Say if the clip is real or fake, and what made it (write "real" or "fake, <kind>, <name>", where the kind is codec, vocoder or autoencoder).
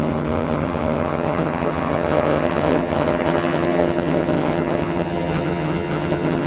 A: fake, vocoder, HiFi-GAN